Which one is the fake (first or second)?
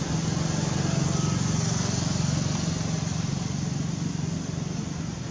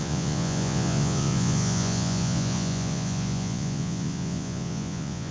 second